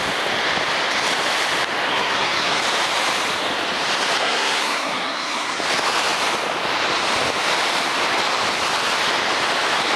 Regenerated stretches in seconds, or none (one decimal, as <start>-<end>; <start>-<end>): 1.9-2.6; 4.2-5.6